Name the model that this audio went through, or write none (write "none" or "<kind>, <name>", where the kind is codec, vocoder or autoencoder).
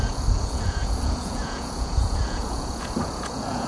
vocoder, Vocos